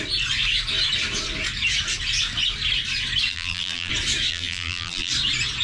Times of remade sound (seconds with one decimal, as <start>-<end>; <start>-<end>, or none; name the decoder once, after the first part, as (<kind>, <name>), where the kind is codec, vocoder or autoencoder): 3.3-3.9 (vocoder, BigVGAN v2); 4.3-5.1